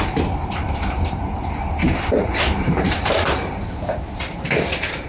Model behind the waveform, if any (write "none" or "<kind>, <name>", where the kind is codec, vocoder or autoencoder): vocoder, BigVGAN v2